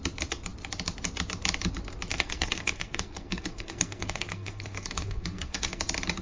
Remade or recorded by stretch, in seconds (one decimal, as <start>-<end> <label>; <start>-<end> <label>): 0.0-2.1 recorded; 2.1-5.8 remade; 5.8-6.2 recorded